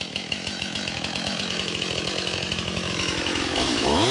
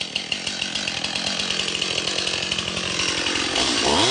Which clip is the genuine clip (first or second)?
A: second